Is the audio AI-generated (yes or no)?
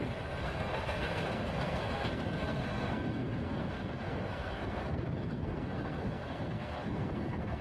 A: yes